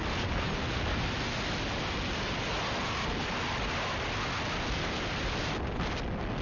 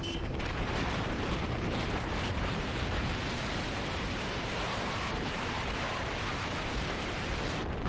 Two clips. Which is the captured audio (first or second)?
first